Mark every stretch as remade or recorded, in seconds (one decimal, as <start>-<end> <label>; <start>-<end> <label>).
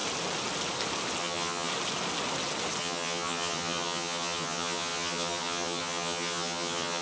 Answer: 0.0-1.2 recorded; 1.2-1.7 remade; 1.7-2.8 recorded; 2.8-7.0 remade